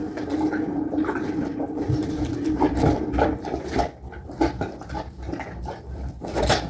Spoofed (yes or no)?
yes